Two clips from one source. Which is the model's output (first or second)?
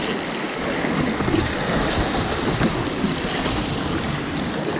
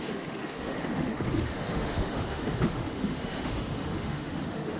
second